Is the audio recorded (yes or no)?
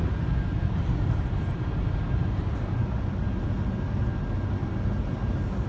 yes